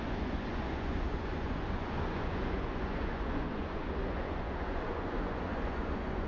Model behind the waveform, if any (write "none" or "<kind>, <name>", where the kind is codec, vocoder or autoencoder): vocoder, Vocos